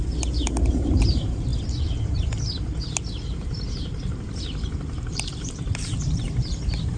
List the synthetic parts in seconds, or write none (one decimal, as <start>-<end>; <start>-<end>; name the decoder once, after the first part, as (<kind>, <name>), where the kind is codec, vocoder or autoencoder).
0.0-1.5 (vocoder, BigVGAN v2); 3.0-7.0